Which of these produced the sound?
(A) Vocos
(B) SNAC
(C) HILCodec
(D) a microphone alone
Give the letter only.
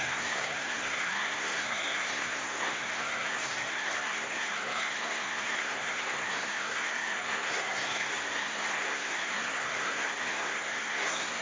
B